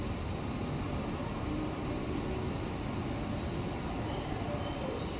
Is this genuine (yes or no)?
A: yes